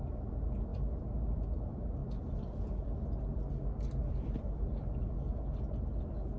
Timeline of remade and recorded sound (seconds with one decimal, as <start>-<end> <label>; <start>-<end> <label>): 0.0-6.4 recorded